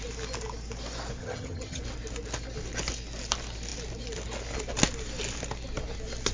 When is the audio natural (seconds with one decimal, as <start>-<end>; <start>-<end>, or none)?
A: 0.0-1.2; 1.8-6.3